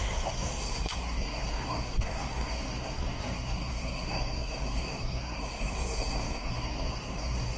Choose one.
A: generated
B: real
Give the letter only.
A